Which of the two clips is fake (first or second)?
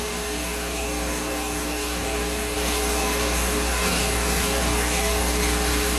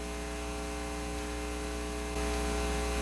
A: first